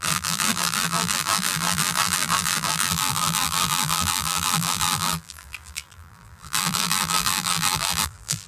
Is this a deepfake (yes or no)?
yes